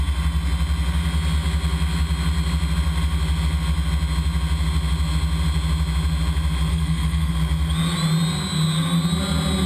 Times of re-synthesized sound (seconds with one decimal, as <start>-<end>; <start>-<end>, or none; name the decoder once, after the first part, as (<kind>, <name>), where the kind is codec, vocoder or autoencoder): 6.7-7.3 (codec, SNAC)